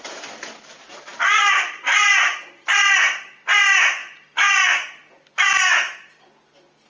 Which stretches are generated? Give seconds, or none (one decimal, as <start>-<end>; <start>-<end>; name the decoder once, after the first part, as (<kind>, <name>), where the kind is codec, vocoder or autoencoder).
none